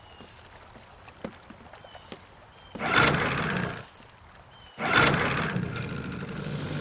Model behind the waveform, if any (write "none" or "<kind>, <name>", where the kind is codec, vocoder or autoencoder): none